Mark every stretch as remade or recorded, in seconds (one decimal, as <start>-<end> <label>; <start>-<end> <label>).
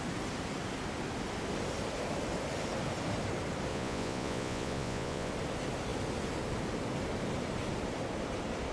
0.0-3.7 recorded; 3.7-5.3 remade; 5.3-8.7 recorded